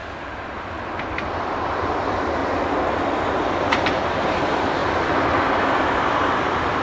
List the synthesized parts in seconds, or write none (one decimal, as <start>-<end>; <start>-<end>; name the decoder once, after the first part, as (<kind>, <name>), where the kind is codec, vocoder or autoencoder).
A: 1.3-2.4 (vocoder, BigVGAN v2); 3.4-4.8; 6.0-6.8